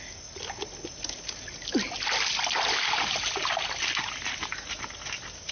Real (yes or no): yes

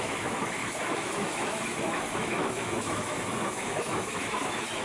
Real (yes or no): no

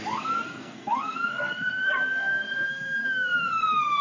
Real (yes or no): no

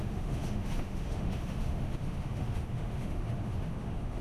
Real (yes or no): no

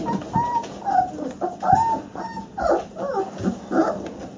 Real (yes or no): yes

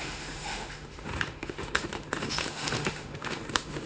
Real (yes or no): no